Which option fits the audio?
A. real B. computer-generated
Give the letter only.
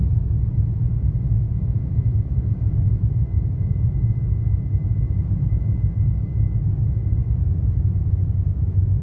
B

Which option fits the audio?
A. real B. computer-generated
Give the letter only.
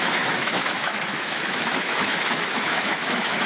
B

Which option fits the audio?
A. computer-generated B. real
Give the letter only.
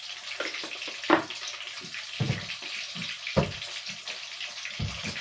B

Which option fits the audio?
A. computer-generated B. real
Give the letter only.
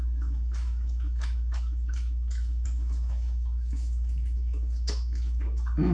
A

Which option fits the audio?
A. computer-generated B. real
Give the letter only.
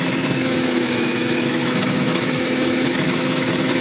A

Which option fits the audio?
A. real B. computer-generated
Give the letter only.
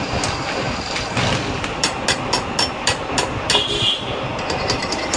A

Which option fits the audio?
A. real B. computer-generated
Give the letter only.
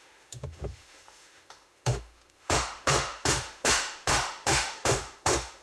B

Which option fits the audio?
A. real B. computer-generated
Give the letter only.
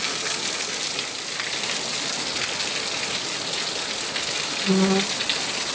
A